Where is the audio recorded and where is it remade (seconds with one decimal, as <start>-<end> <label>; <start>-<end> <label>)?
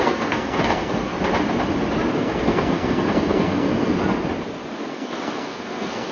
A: 0.0-1.1 remade; 1.1-2.1 recorded; 2.1-3.9 remade; 3.9-4.9 recorded; 4.9-6.1 remade